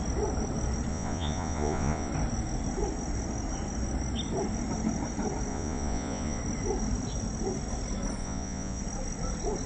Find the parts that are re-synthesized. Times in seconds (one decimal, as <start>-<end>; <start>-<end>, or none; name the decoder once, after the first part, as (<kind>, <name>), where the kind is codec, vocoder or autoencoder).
0.9-2.1 (vocoder, Vocos); 5.5-6.4; 8.2-8.8